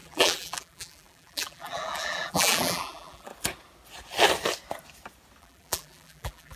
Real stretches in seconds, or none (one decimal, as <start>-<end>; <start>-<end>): 3.3-5.4